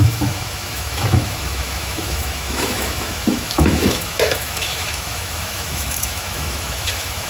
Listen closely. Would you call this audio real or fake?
fake